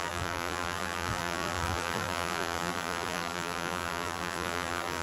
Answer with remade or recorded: remade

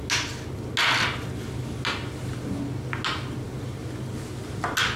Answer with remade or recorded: recorded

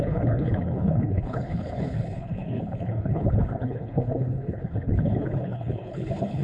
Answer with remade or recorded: remade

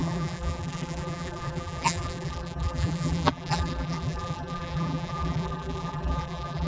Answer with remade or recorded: remade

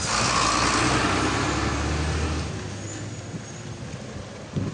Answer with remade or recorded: recorded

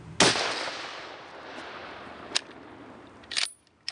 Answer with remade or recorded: recorded